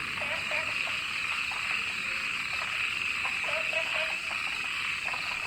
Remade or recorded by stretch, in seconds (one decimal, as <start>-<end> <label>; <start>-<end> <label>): 0.0-5.5 recorded